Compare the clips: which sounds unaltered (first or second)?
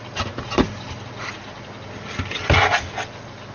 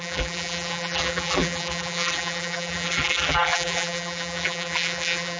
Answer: first